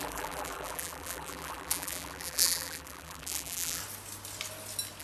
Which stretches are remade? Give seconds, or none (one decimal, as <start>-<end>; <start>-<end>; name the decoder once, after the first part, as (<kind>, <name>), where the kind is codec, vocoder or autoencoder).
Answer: 0.0-3.8 (vocoder, BigVGAN v2)